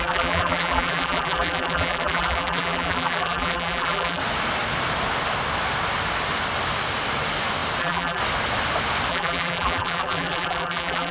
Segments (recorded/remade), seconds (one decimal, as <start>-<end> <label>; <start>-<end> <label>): 0.0-4.2 remade; 4.2-7.8 recorded; 7.8-8.2 remade; 8.2-9.1 recorded; 9.1-11.1 remade

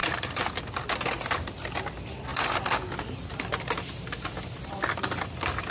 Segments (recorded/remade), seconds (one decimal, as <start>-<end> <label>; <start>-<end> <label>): 0.0-0.6 remade; 0.6-2.3 recorded; 2.3-5.7 remade

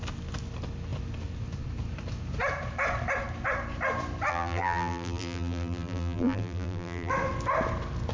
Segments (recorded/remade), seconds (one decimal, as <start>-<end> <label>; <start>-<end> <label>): 0.0-4.3 recorded; 4.3-7.1 remade; 7.1-8.1 recorded

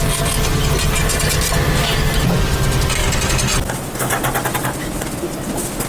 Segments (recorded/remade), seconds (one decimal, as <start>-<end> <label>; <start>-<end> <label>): 0.0-5.9 recorded

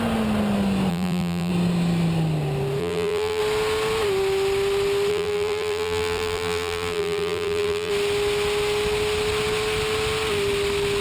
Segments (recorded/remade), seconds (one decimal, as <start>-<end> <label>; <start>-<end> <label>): 0.0-0.9 recorded; 0.9-1.5 remade; 1.5-2.8 recorded; 2.8-3.4 remade; 3.4-5.1 recorded; 5.1-7.9 remade; 7.9-11.0 recorded

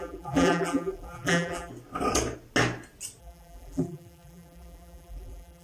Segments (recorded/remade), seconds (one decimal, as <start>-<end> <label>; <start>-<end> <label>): 0.0-1.7 remade; 1.7-3.2 recorded; 3.2-5.6 remade

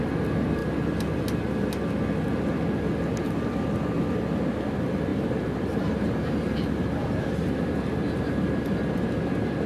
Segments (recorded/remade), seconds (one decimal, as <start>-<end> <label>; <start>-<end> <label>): 0.0-5.1 recorded; 5.1-9.1 remade; 9.1-9.7 recorded